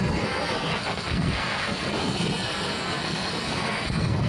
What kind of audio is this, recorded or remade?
remade